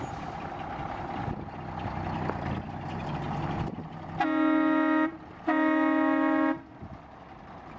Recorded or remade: recorded